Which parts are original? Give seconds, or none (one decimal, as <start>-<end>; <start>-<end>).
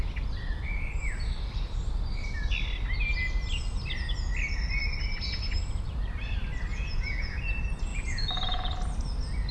0.0-6.7; 7.4-7.9; 8.7-9.5